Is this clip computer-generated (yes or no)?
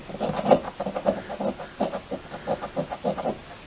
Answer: no